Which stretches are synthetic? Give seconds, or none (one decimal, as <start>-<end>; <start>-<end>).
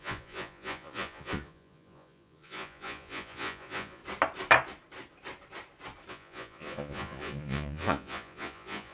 0.0-4.0; 6.1-8.9